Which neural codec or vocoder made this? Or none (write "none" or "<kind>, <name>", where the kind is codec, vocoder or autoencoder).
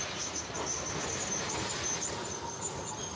none